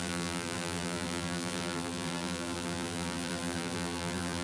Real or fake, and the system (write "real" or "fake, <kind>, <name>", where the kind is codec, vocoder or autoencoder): fake, vocoder, BigVGAN v2